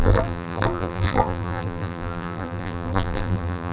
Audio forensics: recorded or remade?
remade